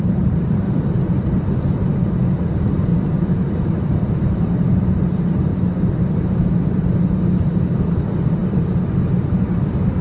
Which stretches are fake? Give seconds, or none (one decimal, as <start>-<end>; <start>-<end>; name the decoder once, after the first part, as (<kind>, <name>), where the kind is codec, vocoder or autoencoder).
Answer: 0.0-5.5 (vocoder, BigVGAN v2); 6.2-8.4